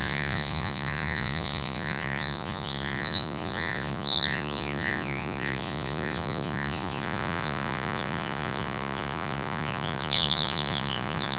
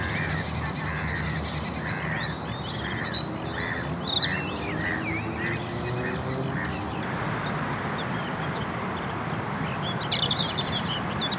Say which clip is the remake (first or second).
first